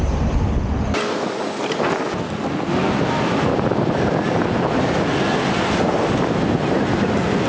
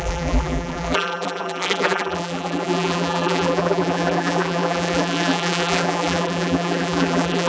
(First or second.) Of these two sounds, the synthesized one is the second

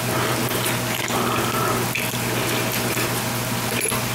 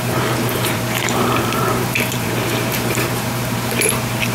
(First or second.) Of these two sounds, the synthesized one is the second